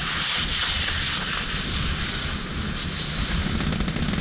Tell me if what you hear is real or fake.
real